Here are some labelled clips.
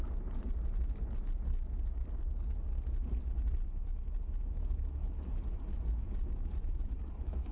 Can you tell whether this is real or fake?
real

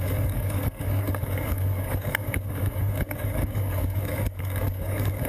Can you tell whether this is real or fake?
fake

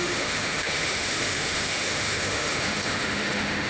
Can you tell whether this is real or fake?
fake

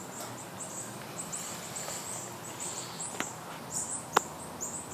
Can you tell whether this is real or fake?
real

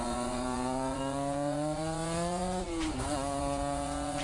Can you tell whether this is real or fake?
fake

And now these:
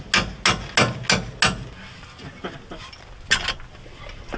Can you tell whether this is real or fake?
real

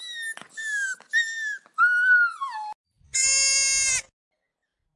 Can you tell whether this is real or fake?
real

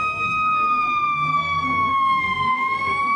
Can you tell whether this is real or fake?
fake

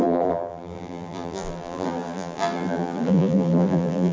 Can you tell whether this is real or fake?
fake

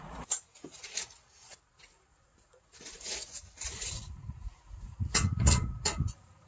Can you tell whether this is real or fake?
fake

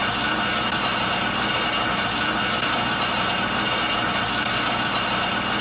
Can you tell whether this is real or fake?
real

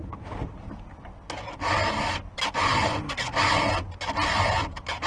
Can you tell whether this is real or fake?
real